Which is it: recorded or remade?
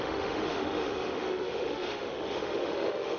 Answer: remade